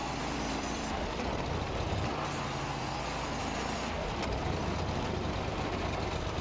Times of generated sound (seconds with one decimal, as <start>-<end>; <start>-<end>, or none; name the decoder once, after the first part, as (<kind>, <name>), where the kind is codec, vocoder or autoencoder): none